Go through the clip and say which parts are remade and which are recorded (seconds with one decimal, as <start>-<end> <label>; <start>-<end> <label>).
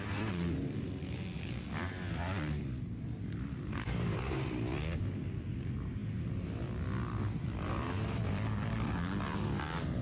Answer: 0.0-6.0 remade; 6.0-6.6 recorded; 6.6-10.0 remade